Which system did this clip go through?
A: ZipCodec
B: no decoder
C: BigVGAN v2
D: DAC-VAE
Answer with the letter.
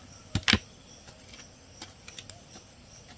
B